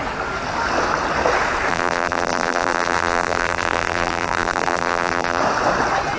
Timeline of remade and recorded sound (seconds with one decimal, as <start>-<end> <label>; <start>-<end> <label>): 0.0-1.7 recorded; 1.7-5.4 remade; 5.4-6.2 recorded